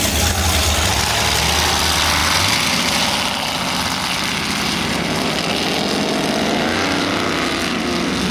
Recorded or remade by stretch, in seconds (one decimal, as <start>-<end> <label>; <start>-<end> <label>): 0.0-8.3 recorded